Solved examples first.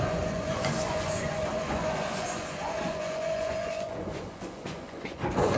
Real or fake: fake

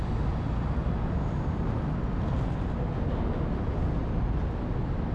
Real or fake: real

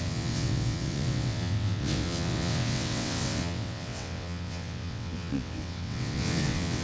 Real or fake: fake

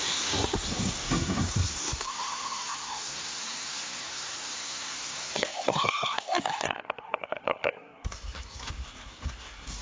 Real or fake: fake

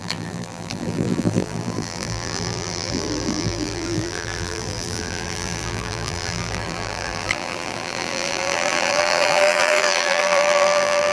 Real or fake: fake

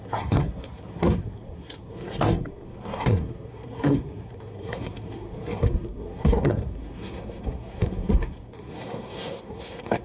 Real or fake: fake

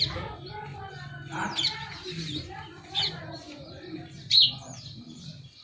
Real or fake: real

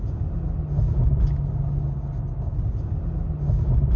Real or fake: real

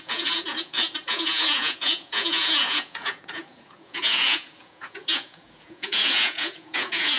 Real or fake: fake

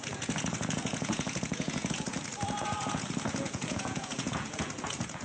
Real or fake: fake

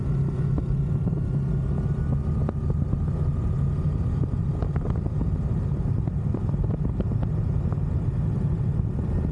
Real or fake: real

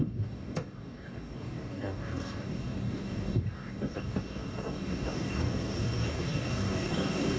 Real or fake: fake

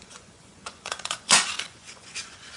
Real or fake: fake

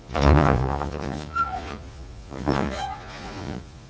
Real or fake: fake